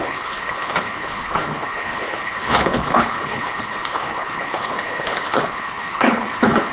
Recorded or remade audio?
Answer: remade